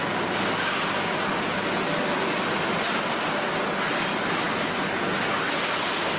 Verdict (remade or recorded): recorded